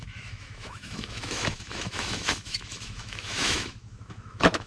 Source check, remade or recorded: remade